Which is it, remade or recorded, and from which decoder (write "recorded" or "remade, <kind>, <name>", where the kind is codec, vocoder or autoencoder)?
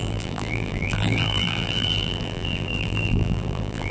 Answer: remade, vocoder, BigVGAN v2